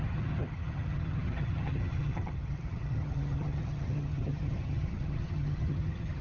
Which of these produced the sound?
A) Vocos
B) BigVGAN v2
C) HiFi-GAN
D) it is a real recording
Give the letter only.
C